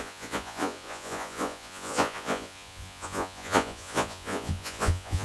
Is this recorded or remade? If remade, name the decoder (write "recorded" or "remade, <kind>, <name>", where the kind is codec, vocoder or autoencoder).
remade, vocoder, Vocos